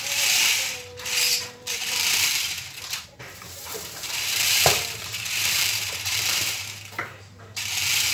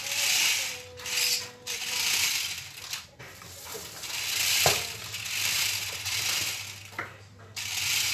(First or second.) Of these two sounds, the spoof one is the first